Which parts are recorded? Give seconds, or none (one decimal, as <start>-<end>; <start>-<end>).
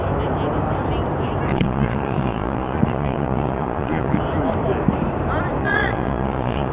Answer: 0.0-1.5; 4.2-5.6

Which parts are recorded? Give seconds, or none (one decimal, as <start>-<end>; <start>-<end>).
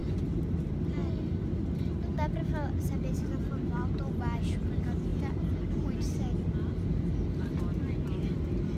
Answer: 0.0-8.8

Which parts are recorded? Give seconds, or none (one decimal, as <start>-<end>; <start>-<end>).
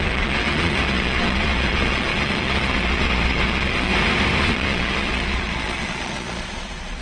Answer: 3.9-4.4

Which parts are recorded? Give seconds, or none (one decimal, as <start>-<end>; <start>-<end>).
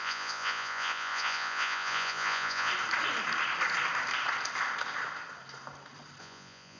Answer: 2.7-6.2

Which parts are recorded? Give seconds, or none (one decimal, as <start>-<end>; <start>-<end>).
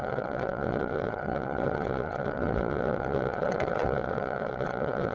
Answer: none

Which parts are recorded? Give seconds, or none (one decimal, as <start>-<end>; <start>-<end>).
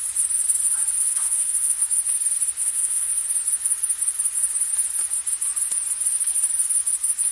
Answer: 0.0-1.0; 1.8-2.6; 3.1-7.3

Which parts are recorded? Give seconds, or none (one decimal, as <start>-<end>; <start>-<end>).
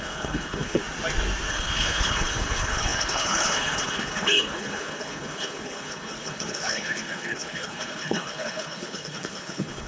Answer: 0.8-1.5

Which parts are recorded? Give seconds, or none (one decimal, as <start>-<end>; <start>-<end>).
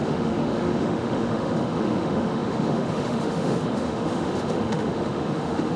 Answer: none